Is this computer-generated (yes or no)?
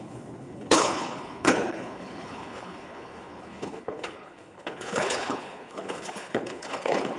yes